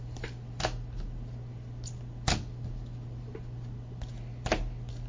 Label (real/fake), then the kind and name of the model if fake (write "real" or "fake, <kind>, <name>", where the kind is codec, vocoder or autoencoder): real